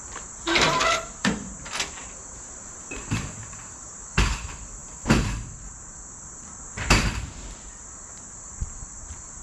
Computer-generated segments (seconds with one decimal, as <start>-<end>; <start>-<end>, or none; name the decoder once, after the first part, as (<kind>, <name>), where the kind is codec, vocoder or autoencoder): 0.0-9.4 (vocoder, BigVGAN v2)